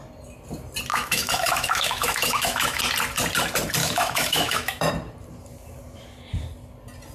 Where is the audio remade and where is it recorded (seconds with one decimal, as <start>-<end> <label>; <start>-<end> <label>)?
0.0-0.9 recorded; 0.9-2.8 remade; 2.8-3.8 recorded; 3.8-4.9 remade; 4.9-7.1 recorded